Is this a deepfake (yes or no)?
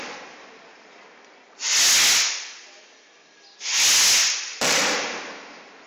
no